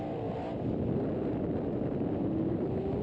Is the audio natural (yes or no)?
yes